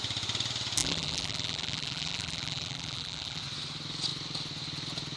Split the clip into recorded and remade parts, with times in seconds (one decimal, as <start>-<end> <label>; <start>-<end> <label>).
0.0-0.8 recorded; 0.8-3.4 remade; 3.4-5.2 recorded